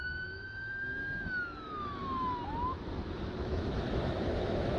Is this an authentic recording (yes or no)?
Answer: no